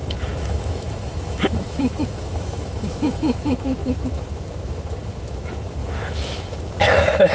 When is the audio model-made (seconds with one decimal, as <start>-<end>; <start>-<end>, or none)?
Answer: 0.0-7.3